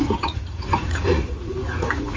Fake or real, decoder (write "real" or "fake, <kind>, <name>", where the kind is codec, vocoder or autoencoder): fake, vocoder, Vocos